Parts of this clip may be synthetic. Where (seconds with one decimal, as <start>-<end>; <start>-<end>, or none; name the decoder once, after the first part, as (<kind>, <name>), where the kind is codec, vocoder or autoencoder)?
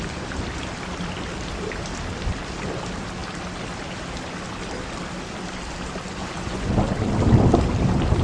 6.2-6.7 (vocoder, Vocos)